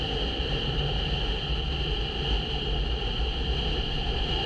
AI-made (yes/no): no